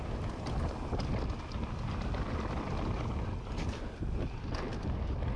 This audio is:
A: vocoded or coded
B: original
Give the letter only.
B